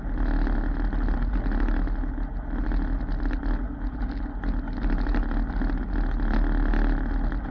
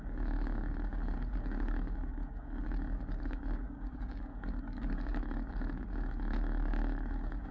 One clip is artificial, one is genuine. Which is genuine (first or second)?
first